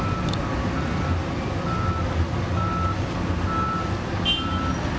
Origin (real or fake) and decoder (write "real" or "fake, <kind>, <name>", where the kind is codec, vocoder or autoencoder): real